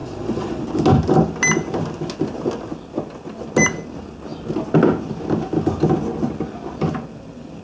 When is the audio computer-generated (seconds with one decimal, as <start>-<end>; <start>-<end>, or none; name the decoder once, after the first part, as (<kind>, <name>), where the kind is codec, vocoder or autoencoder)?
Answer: 0.0-0.7 (vocoder, Vocos)